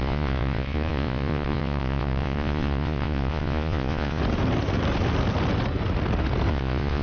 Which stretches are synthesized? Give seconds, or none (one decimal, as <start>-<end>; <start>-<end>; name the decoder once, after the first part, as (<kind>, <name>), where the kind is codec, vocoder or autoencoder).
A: 0.0-4.2 (vocoder, Vocos); 6.5-7.0